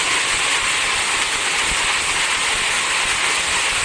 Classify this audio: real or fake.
real